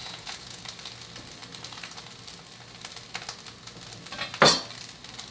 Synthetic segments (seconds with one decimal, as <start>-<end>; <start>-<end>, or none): 0.0-0.6